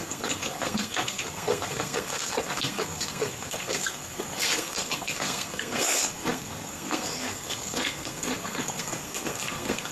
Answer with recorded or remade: remade